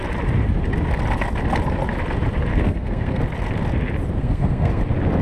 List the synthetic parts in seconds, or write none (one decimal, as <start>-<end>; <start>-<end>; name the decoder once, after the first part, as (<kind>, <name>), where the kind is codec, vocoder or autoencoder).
2.5-3.2 (codec, SNAC); 4.2-4.8